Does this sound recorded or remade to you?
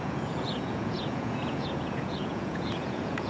remade